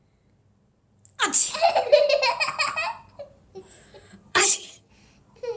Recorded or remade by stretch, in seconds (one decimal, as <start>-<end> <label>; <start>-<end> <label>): 0.0-4.3 recorded; 4.3-4.9 remade; 4.9-5.6 recorded

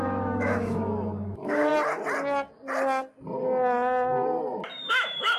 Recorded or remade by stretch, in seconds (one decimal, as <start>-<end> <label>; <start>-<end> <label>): 0.0-1.7 remade; 1.7-4.9 recorded; 4.9-5.4 remade

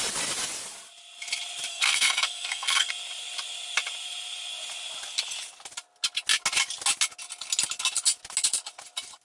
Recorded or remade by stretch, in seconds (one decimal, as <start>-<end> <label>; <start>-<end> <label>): 0.0-1.7 recorded; 1.7-2.9 remade; 2.9-9.2 recorded